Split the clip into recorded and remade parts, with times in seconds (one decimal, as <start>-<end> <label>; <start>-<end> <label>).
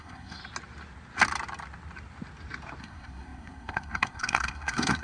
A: 0.0-0.4 remade; 0.4-2.8 recorded; 2.8-5.0 remade